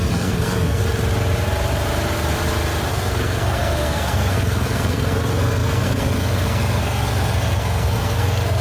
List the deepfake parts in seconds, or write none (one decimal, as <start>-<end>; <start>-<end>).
0.0-0.8; 2.9-8.6